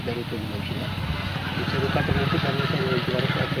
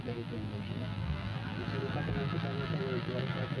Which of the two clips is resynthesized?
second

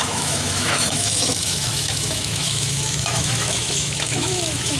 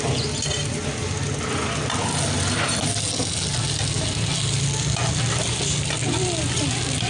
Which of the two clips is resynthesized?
first